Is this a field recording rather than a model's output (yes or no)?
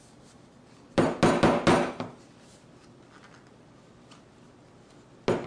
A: yes